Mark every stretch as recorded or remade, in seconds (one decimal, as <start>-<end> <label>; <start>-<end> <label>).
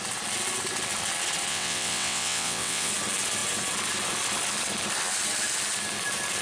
0.0-1.5 recorded; 1.5-2.9 remade; 2.9-6.4 recorded